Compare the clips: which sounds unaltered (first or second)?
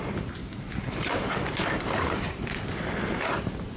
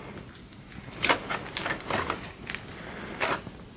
second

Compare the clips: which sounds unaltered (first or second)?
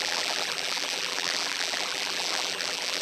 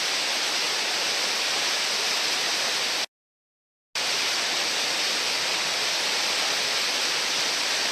second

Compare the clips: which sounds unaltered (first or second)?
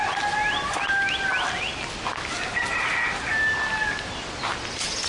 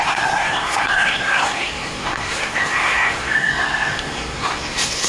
first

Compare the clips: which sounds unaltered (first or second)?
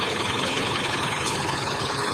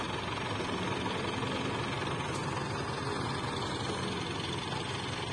second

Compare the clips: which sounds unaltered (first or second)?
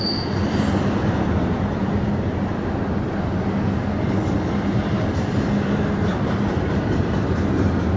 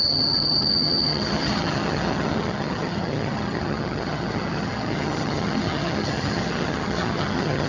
first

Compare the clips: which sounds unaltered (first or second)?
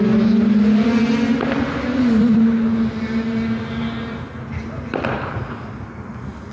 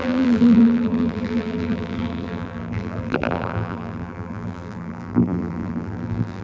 first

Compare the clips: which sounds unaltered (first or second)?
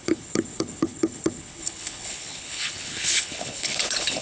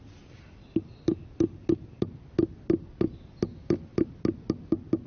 second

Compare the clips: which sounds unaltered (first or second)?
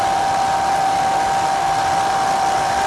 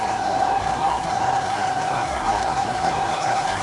first